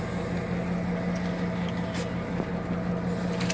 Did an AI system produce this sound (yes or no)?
no